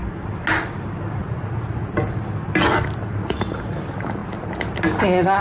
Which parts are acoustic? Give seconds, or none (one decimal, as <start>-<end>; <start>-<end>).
0.0-1.2; 1.9-3.2; 3.8-5.4